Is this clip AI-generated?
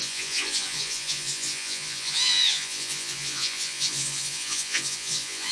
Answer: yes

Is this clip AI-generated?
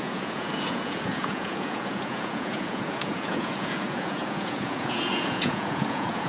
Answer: yes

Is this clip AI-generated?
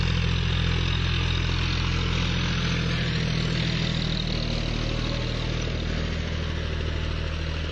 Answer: no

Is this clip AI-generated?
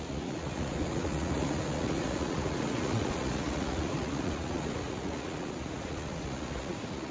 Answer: yes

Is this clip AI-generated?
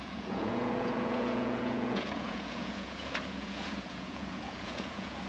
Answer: yes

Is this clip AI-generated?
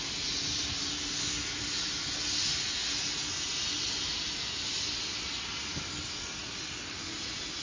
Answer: no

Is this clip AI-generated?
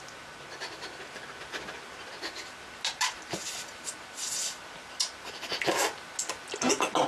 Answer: no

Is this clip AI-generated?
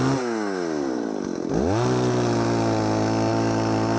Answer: no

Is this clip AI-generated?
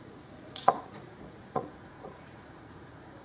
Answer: yes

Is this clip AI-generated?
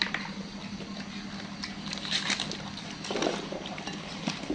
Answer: no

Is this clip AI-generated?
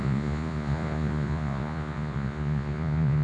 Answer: yes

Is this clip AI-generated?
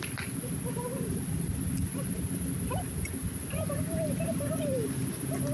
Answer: no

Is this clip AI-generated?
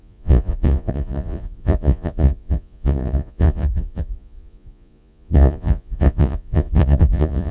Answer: yes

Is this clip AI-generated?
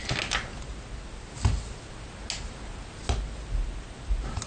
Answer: no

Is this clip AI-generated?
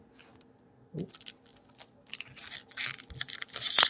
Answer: no